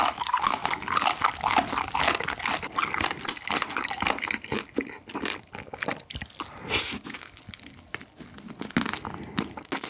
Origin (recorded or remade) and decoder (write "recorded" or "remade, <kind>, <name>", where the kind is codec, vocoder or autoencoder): recorded